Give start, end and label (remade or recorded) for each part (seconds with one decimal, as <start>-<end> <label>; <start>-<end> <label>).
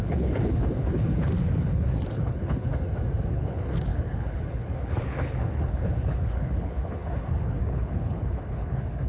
0.0-2.7 remade; 2.7-3.3 recorded; 3.3-9.1 remade